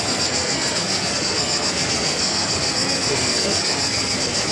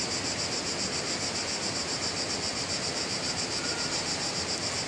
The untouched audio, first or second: second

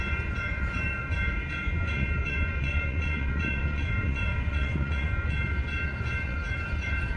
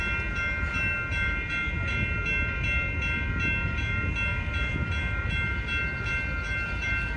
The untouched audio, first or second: second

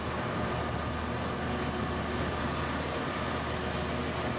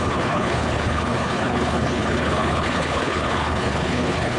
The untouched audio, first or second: first